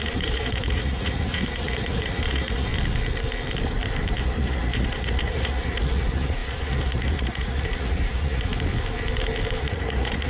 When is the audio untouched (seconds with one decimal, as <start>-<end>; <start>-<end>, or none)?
2.7-4.2; 8.5-9.6